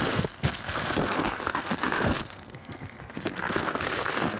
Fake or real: fake